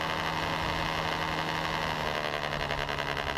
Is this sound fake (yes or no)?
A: no